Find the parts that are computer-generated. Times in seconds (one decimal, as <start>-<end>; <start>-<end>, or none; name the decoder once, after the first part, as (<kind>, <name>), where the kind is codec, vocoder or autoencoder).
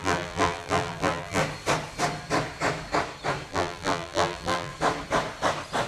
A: 0.0-1.4 (vocoder, BigVGAN v2); 3.5-4.7